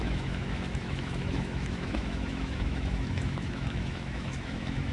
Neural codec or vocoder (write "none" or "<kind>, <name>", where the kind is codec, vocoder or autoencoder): autoencoder, DAC-VAE